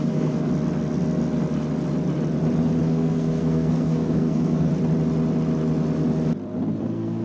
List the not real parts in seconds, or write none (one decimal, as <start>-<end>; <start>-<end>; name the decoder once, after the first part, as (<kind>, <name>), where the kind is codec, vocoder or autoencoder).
0.0-0.5 (codec, SNAC); 2.8-4.7; 6.8-7.2

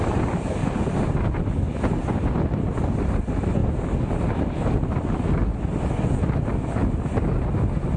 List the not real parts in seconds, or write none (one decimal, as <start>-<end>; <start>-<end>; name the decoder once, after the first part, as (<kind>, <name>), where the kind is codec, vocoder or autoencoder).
none

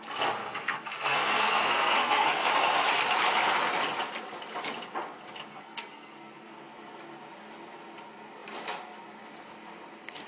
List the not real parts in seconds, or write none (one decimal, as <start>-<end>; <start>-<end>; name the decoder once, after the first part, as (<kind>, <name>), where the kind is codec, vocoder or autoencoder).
0.4-2.5 (codec, SNAC); 5.5-6.5

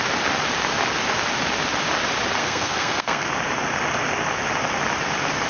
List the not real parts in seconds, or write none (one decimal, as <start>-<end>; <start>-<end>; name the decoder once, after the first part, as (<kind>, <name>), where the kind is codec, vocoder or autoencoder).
2.4-3.3 (codec, SNAC)

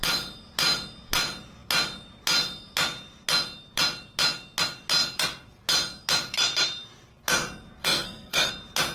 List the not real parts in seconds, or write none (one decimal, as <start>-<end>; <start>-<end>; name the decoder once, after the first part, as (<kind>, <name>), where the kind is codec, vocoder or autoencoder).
7.8-8.5 (codec, SNAC)

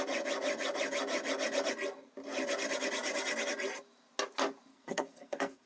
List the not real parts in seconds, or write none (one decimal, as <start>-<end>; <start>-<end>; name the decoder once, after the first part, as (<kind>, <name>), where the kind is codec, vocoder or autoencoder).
4.7-5.7 (codec, SNAC)

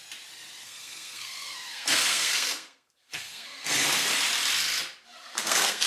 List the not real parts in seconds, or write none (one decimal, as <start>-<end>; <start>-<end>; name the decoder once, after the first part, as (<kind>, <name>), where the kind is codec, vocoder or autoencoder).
0.6-4.1 (codec, SNAC); 5.2-5.9

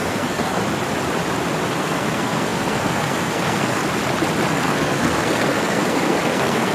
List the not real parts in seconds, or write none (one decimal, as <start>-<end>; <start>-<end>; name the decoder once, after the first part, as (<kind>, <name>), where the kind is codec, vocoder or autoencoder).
0.0-0.6 (codec, SNAC); 1.8-3.8; 4.5-6.7